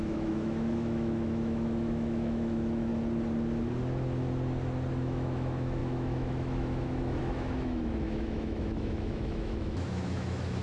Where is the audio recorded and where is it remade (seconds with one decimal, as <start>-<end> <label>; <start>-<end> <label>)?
0.0-2.9 remade; 2.9-4.9 recorded; 4.9-10.6 remade

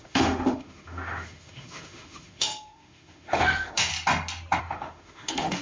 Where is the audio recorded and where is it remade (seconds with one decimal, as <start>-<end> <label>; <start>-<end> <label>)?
0.0-3.9 remade; 3.9-4.6 recorded; 4.6-5.6 remade

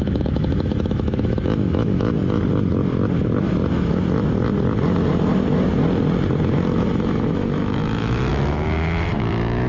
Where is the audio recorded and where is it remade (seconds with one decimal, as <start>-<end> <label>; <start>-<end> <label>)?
0.0-2.2 remade; 2.2-6.9 recorded; 6.9-9.7 remade

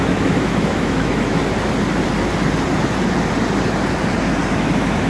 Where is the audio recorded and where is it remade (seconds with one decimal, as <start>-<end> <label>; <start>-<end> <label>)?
0.0-1.4 remade; 1.4-4.5 recorded; 4.5-5.1 remade

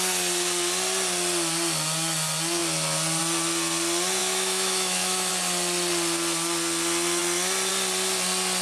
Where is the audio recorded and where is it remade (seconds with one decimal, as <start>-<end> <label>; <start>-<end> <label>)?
0.0-4.2 recorded; 4.2-5.3 remade; 5.3-8.6 recorded

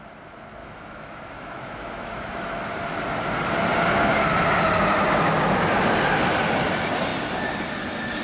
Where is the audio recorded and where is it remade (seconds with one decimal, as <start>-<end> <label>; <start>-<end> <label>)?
0.0-0.6 recorded; 0.6-2.6 remade; 2.6-8.2 recorded

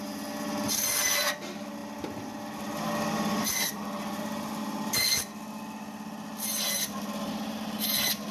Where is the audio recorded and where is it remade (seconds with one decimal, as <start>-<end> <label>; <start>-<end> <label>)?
0.0-8.3 recorded